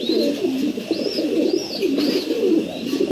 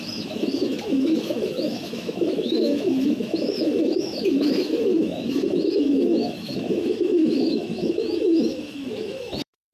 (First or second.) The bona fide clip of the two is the first